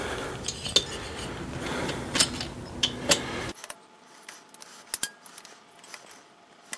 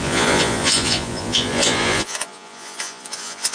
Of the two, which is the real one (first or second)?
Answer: first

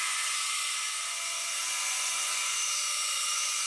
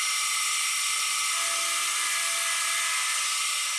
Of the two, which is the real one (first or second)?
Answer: second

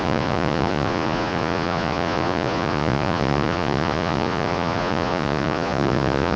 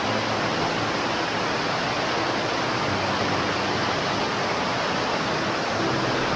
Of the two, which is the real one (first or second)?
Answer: second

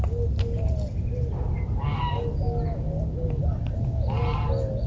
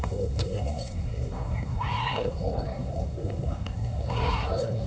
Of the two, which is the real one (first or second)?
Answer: first